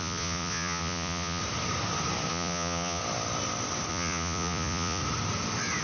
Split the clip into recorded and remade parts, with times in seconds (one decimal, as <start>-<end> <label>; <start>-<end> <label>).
0.0-1.4 remade; 1.4-2.3 recorded; 2.3-3.0 remade; 3.0-3.9 recorded; 3.9-5.0 remade; 5.0-5.8 recorded